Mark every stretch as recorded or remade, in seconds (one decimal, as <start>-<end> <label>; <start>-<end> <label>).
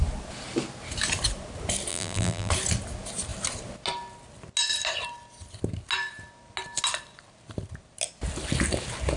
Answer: 0.0-1.9 recorded; 1.9-2.5 remade; 2.5-9.2 recorded